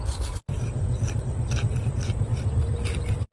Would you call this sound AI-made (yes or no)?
no